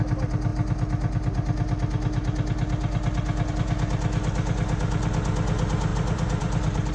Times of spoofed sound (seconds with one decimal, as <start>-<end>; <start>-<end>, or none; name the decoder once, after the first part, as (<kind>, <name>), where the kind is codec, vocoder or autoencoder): 5.9-6.9 (vocoder, BigVGAN v2)